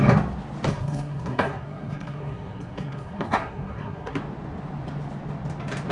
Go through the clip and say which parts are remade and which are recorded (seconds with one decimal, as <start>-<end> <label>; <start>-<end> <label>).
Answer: 0.0-0.7 recorded; 0.7-4.2 remade; 4.2-5.9 recorded